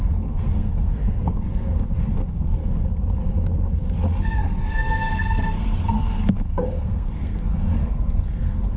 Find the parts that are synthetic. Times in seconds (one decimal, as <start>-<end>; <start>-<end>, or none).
0.0-2.6; 4.2-8.8